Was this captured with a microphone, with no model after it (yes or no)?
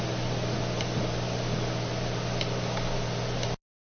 yes